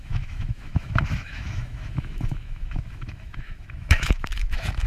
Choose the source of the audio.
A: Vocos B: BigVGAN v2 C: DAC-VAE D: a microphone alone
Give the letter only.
C